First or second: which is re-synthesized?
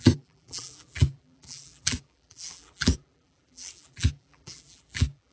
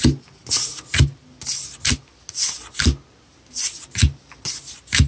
first